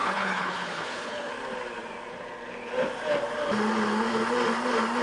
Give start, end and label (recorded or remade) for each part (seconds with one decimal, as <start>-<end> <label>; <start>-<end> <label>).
0.0-1.3 remade; 1.3-5.0 recorded